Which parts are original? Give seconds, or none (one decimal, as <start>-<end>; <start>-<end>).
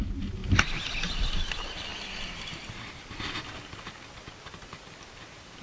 0.0-5.6